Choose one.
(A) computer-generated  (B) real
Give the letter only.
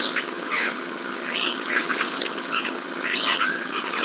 A